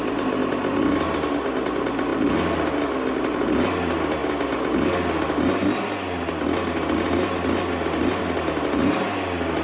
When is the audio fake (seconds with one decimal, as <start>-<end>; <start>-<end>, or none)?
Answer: none